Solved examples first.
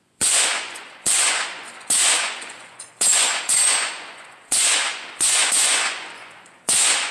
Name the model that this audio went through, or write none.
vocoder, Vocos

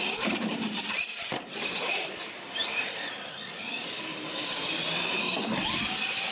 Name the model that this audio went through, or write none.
vocoder, BigVGAN v2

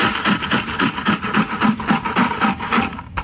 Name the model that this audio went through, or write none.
none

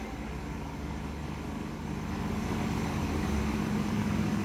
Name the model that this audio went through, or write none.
codec, DAC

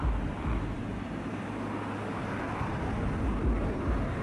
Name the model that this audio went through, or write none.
none